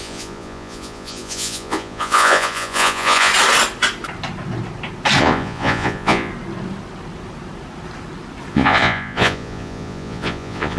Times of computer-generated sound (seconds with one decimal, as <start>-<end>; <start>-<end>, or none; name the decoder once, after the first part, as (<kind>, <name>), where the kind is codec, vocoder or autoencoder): 0.0-3.3 (vocoder, Vocos); 5.2-6.3; 8.5-10.8